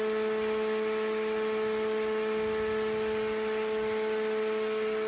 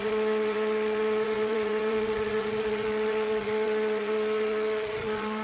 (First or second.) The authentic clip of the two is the first